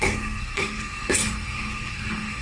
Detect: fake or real fake